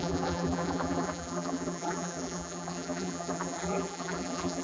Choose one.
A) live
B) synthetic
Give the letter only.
B